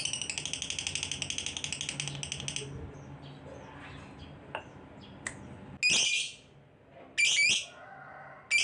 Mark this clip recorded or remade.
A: recorded